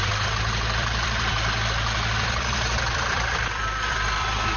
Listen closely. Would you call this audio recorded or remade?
remade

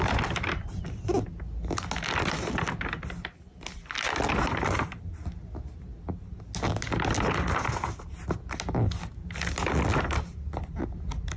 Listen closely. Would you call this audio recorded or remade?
recorded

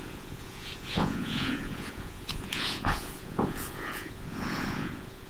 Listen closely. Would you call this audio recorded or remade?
remade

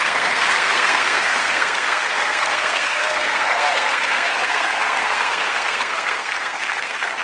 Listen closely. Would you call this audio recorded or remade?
remade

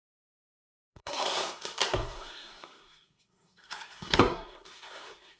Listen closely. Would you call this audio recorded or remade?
remade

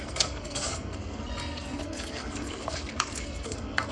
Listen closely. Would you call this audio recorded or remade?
remade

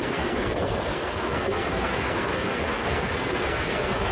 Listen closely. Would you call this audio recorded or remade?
remade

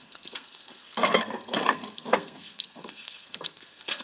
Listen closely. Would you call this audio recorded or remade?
remade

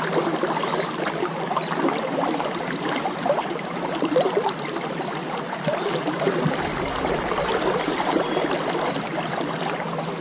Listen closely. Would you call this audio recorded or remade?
recorded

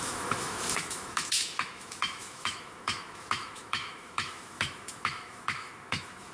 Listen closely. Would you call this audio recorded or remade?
remade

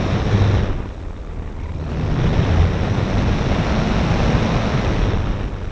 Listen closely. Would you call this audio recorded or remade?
recorded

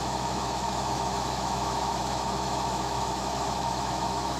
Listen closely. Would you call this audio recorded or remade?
remade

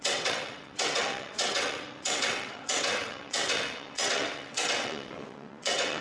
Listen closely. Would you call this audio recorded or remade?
remade